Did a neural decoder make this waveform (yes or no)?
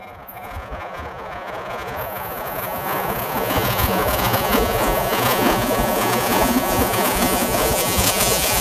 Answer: yes